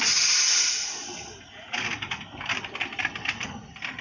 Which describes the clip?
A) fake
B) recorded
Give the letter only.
B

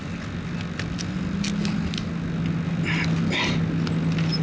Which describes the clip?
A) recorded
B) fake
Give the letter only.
A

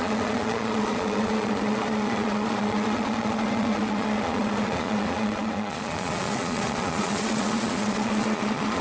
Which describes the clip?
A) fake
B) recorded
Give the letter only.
A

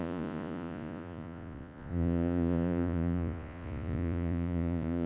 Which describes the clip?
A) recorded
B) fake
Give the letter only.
B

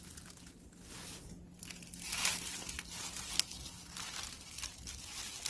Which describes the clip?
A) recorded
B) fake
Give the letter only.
A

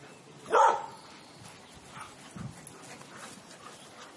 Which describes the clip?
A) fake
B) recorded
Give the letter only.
B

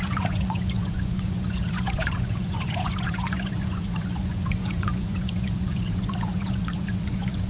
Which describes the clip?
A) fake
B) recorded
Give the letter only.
A